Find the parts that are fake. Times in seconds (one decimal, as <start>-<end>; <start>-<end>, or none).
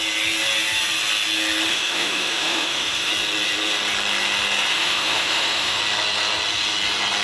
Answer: 1.7-3.1; 4.7-5.8